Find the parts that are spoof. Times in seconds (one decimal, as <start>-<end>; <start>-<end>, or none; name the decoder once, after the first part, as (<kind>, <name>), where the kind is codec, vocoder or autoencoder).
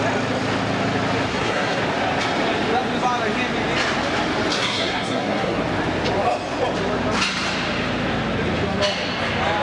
1.3-1.8 (codec, SNAC); 4.5-5.6